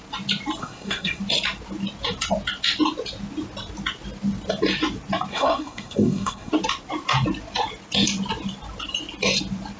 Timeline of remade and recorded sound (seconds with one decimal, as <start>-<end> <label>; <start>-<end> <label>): 0.0-0.6 recorded; 0.6-1.2 remade; 1.2-5.3 recorded; 5.3-6.5 remade; 6.5-9.8 recorded